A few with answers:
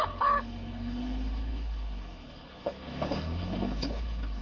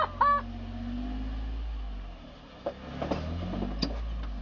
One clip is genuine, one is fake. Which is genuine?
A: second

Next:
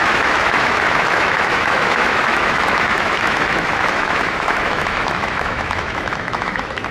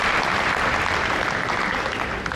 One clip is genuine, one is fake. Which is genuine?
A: second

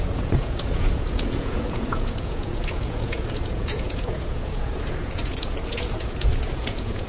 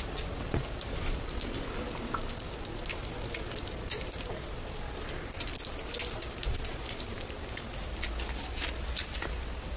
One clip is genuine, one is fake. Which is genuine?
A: second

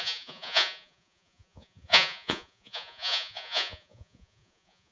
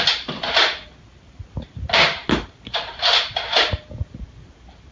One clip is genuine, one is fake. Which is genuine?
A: second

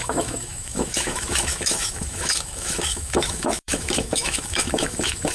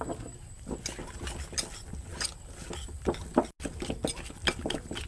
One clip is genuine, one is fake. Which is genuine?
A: second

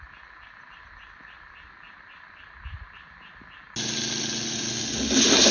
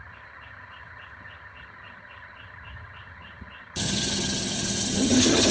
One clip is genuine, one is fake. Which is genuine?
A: first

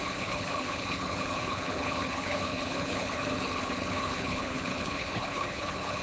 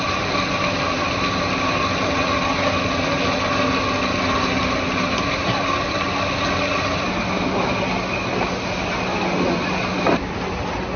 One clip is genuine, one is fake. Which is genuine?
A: second